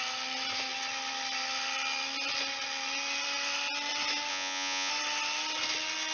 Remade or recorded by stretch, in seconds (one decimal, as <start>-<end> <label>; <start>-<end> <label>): 0.0-4.3 recorded; 4.3-4.9 remade; 4.9-6.1 recorded

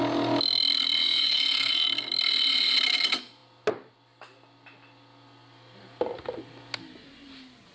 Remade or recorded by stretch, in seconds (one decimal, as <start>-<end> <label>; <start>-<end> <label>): 0.0-1.2 recorded; 1.2-1.7 remade; 1.7-7.7 recorded

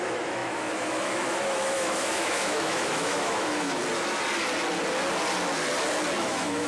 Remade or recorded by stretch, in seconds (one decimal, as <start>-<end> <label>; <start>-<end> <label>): 0.0-3.8 remade; 3.8-6.2 recorded; 6.2-6.7 remade

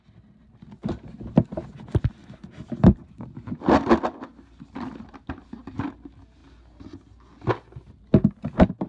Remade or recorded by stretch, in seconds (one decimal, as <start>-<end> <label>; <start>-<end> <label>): 0.0-2.2 recorded; 2.2-5.6 remade; 5.6-8.9 recorded

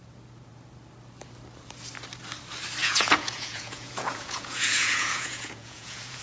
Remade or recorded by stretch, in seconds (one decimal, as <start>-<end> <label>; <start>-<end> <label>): 0.0-2.8 recorded; 2.8-6.2 remade

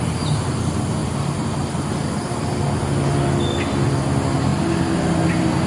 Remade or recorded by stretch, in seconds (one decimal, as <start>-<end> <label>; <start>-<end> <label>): 0.0-1.0 recorded; 1.0-2.8 remade; 2.8-5.7 recorded

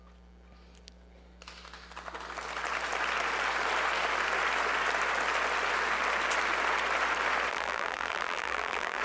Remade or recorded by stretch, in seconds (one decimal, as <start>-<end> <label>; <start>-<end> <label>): 0.0-7.5 recorded; 7.5-9.0 remade